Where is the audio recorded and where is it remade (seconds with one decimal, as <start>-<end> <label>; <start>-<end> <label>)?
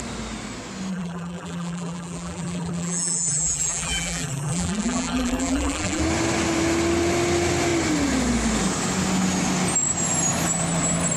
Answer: 0.0-0.9 recorded; 0.9-6.0 remade; 6.0-11.2 recorded